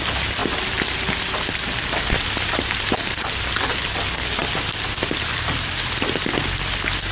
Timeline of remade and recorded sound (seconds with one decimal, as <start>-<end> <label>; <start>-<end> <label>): 0.0-7.1 recorded